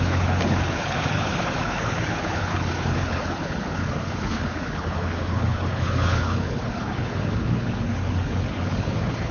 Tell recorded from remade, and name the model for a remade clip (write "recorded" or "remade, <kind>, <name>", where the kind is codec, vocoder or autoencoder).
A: remade, codec, HILCodec